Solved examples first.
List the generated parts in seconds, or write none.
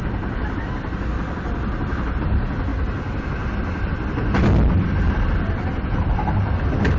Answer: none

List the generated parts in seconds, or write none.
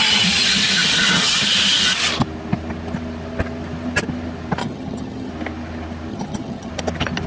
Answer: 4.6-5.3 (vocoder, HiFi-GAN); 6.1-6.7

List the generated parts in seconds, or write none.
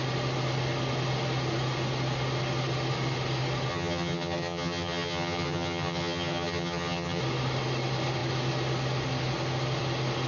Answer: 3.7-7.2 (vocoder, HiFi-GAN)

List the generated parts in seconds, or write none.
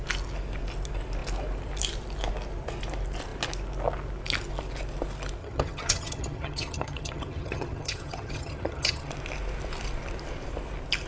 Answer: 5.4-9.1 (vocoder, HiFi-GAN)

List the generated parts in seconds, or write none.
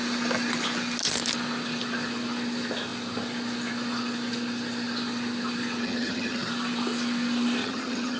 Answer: 5.8-6.5 (vocoder, HiFi-GAN); 7.6-8.2